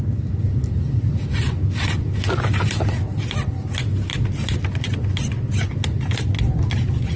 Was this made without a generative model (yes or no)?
yes